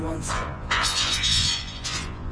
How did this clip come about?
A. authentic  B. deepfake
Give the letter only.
B